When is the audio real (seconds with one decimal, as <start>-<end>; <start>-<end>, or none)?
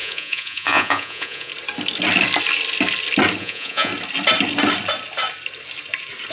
1.5-3.4; 3.9-6.3